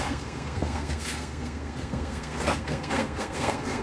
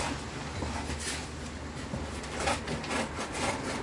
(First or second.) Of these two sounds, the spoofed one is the first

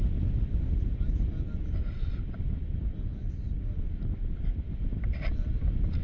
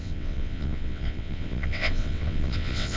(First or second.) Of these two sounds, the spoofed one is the second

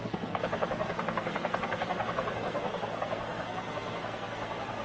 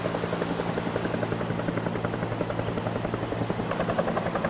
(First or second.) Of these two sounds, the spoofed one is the first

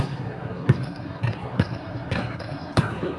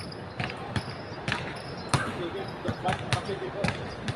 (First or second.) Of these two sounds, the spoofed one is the first